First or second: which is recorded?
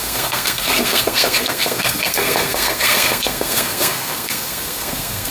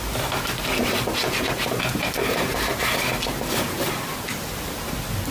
second